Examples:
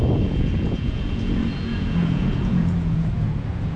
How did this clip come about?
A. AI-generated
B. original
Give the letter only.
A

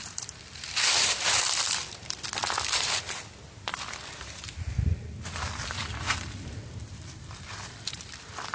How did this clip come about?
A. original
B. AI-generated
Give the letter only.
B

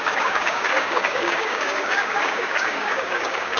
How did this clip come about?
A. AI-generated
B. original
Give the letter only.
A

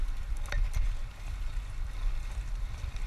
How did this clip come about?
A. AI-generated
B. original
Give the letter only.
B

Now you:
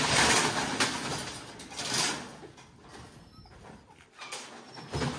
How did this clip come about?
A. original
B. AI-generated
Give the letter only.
A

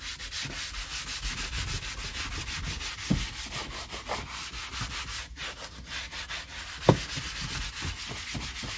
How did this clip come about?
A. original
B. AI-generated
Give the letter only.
A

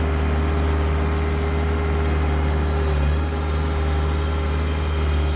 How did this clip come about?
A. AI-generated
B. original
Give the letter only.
B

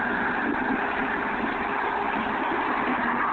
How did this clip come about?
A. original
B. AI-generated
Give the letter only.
A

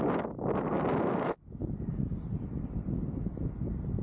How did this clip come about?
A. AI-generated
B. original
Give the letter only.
B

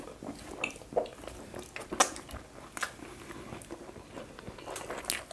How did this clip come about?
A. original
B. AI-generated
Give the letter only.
A